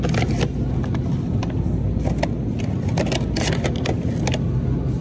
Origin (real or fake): real